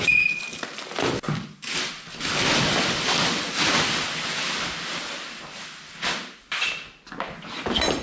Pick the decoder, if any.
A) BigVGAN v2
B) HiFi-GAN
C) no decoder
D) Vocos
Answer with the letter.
C